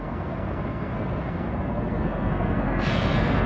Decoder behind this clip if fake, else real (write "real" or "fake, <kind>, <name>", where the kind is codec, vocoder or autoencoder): fake, codec, SNAC